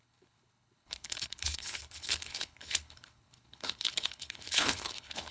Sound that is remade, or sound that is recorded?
remade